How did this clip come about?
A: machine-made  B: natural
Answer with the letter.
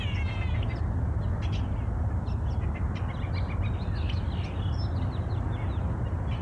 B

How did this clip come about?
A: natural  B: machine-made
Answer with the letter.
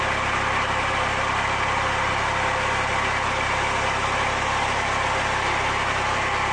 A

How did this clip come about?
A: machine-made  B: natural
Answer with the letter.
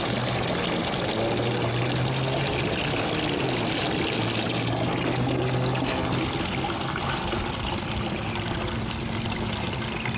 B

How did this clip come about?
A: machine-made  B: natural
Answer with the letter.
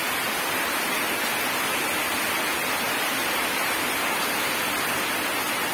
B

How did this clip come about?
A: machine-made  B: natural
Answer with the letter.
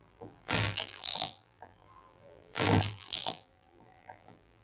A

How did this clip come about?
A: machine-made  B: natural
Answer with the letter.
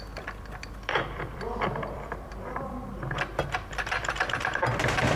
A